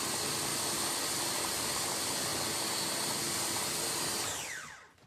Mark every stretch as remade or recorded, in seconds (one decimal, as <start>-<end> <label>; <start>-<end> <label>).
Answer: 0.0-0.5 remade; 0.5-1.3 recorded; 1.3-2.3 remade; 2.3-4.0 recorded; 4.0-5.1 remade